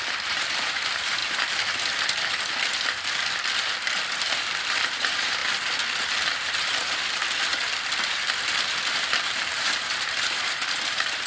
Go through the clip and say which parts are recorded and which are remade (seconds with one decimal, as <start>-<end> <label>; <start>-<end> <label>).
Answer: 0.0-1.2 remade; 1.2-4.2 recorded; 4.2-5.4 remade; 5.4-6.1 recorded; 6.1-7.2 remade; 7.2-9.2 recorded; 9.2-11.3 remade